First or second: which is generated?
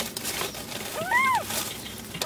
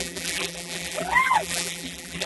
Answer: second